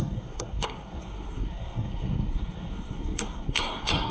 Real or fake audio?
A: fake